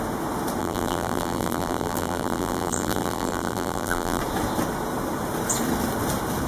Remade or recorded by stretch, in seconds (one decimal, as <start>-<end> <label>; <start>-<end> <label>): 0.0-0.6 recorded; 0.6-4.2 remade; 4.2-6.5 recorded